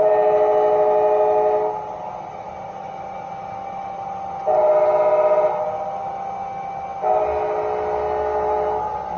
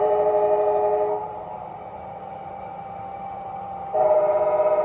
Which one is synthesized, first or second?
second